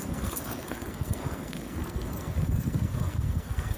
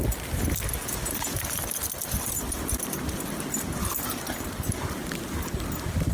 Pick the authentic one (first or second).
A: second